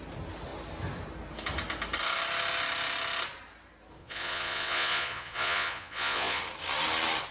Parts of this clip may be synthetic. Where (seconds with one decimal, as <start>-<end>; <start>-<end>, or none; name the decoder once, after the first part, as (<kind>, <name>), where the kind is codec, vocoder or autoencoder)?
4.0-6.4 (vocoder, Vocos)